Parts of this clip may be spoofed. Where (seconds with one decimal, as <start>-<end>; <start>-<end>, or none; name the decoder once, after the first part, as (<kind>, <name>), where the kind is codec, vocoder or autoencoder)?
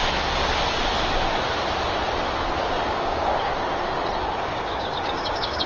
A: 2.9-3.3 (codec, DAC); 4.2-5.7